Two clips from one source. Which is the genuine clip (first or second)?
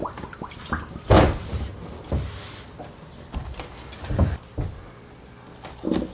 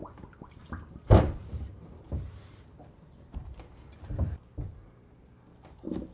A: first